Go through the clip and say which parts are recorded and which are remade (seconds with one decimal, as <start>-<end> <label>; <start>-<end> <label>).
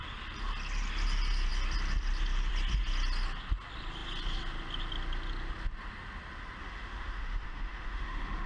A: 0.0-6.6 recorded; 6.6-8.5 remade